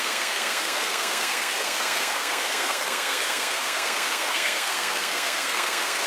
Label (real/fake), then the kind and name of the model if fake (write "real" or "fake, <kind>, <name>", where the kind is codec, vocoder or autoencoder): fake, codec, SNAC